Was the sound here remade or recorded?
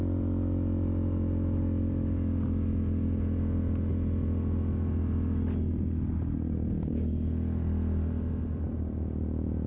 recorded